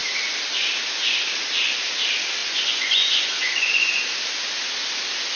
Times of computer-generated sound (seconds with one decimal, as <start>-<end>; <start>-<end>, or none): 2.4-4.0